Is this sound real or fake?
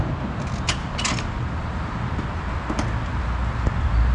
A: real